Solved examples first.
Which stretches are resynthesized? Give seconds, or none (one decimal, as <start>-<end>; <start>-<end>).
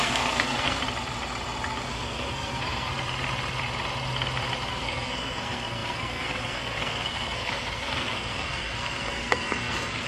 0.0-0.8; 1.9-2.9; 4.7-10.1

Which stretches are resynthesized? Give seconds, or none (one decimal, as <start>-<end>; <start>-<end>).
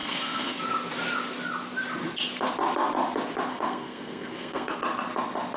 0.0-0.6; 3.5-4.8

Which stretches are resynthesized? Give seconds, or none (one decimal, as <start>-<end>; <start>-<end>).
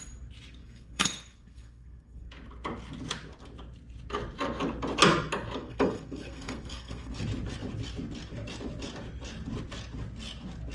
0.6-2.3; 5.6-7.1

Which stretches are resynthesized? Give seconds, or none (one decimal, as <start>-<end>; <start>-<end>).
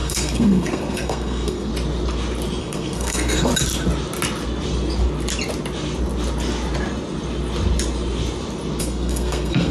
0.0-1.7; 2.6-3.5; 8.8-9.7